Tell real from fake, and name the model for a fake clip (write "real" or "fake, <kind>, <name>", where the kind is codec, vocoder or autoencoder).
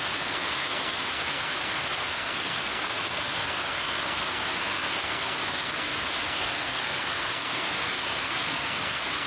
fake, codec, SNAC